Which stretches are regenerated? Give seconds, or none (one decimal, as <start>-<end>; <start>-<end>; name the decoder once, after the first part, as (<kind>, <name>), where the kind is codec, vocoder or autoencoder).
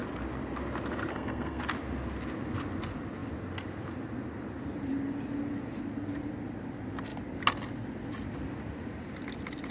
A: 1.1-1.6 (codec, SNAC)